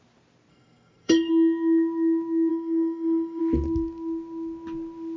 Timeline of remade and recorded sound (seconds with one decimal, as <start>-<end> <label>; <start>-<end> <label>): 0.0-0.5 recorded; 0.5-1.3 remade; 1.3-2.5 recorded; 2.5-3.4 remade; 3.4-5.2 recorded